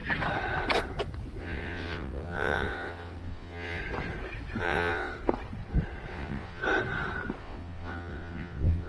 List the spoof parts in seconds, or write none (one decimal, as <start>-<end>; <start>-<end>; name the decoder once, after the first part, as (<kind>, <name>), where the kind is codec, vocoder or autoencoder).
1.4-3.8 (vocoder, WaveNeXt); 4.6-5.1; 6.1-6.6; 7.4-8.9